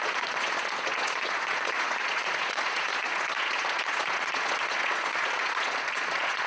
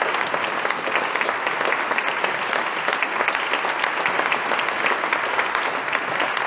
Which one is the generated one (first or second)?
first